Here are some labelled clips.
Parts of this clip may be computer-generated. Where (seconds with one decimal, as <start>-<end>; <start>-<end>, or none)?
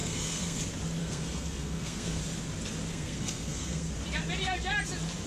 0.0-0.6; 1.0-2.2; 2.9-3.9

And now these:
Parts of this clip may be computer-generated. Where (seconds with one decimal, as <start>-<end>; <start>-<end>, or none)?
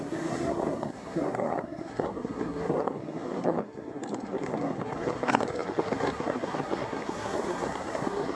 0.0-8.4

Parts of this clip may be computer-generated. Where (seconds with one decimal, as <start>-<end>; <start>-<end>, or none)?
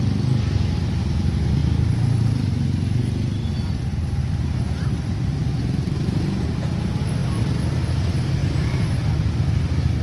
5.4-6.2; 7.2-7.8; 8.4-9.2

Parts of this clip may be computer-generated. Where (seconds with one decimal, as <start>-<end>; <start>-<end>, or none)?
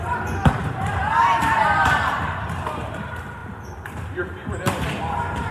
0.0-5.5